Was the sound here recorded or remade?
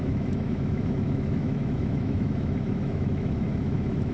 remade